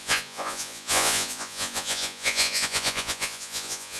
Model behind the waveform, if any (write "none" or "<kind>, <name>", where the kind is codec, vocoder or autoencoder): vocoder, Vocos